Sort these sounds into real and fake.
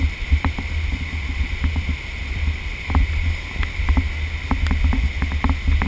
real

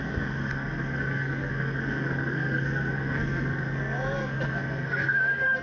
fake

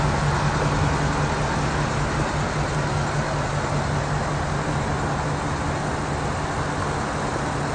real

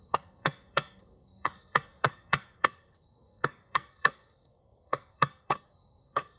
fake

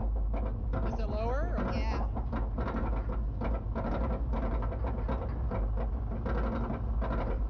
real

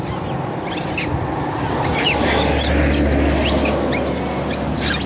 real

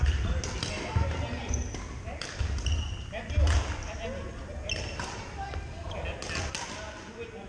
real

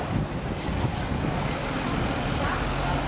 real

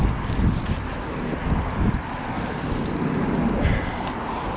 real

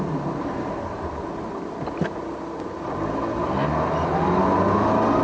real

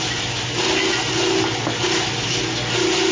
real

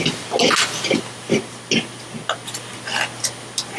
real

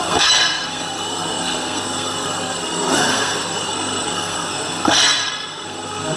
fake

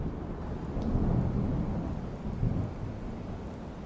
real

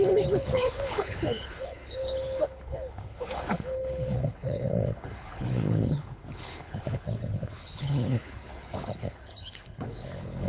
fake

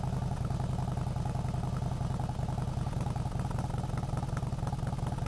real